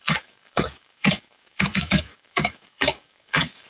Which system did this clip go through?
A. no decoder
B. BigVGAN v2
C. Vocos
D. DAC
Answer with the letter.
D